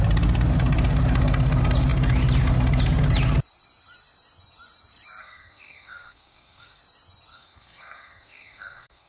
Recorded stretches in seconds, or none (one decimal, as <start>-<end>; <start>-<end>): 0.0-5.2; 6.8-7.3